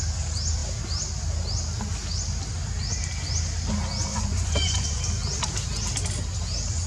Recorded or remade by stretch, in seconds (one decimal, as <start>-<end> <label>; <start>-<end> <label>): 0.0-4.1 recorded; 4.1-5.0 remade; 5.0-6.9 recorded